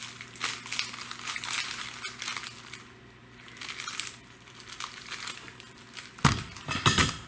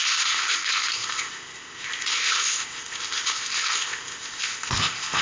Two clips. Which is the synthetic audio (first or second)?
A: second